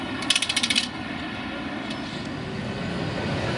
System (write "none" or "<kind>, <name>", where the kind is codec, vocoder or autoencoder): none